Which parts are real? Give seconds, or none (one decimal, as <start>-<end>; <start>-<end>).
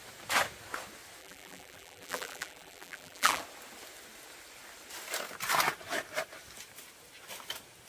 0.0-1.2; 3.4-7.9